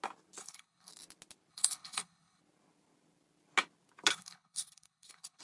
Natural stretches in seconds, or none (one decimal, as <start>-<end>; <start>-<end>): 0.0-0.4; 0.9-1.5; 2.4-4.1